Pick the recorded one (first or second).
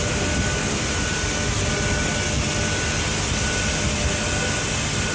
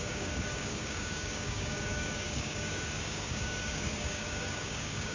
first